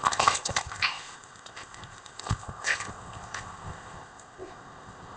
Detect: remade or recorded remade